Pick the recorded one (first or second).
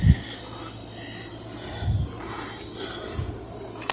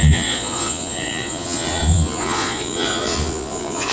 first